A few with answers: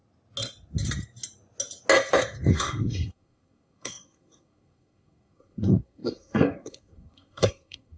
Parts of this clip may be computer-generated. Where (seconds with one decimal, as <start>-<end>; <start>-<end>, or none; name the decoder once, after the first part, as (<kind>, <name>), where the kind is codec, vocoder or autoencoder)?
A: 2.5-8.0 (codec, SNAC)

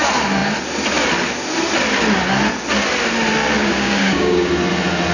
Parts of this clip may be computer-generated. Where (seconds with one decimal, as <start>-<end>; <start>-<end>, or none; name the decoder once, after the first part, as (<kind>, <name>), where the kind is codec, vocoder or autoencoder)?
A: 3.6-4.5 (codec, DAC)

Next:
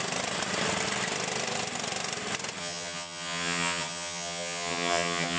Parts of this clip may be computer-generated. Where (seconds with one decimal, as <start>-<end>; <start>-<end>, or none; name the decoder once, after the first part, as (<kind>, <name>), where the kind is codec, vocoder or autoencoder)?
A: 2.6-5.4 (vocoder, HiFi-GAN)